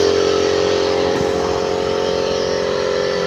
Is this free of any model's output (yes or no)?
no